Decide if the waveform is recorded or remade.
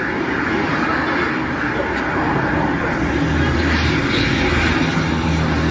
recorded